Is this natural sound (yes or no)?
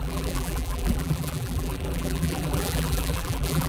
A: no